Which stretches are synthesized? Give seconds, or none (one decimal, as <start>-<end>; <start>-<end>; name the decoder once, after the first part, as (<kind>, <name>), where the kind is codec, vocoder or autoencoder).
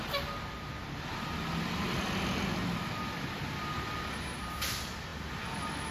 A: none